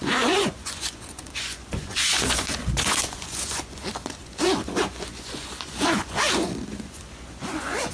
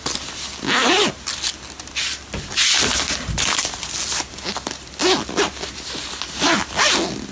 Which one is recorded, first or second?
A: second